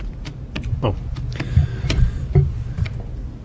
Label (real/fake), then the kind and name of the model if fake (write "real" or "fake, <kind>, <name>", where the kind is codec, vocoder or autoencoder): real